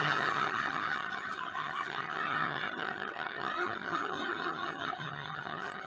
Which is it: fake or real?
fake